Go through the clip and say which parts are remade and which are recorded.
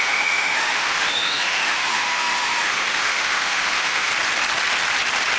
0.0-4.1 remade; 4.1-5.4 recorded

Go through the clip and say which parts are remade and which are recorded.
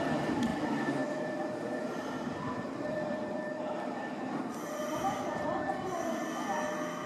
0.0-6.2 remade; 6.2-7.1 recorded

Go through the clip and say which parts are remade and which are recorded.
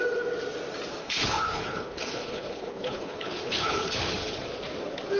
0.0-1.0 recorded; 1.0-4.1 remade; 4.1-5.2 recorded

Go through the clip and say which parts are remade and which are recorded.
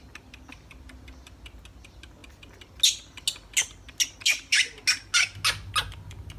0.0-6.4 recorded